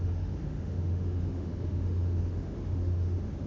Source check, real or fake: fake